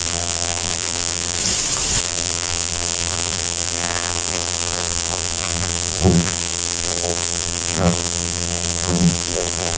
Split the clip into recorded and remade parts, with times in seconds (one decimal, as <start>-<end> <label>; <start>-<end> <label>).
0.0-1.4 remade; 1.4-2.0 recorded; 2.0-9.8 remade